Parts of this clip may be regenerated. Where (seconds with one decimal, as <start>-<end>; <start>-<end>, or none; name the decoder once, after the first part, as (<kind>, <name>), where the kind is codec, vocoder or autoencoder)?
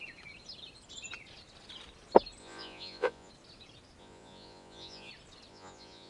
2.4-3.3 (vocoder, Vocos); 4.0-5.1; 5.5-6.1